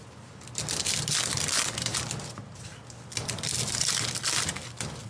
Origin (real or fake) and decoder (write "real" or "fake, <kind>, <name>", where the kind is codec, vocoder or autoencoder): real